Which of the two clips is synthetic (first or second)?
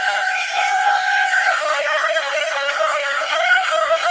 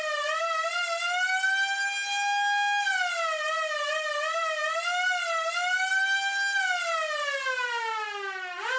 first